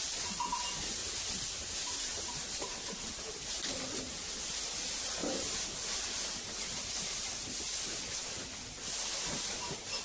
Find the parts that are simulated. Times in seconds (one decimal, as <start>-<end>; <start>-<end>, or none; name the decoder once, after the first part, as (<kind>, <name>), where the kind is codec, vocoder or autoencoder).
1.0-4.0 (vocoder, BigVGAN v2); 5.2-5.7